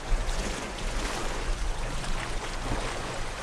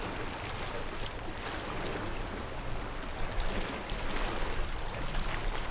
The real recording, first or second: second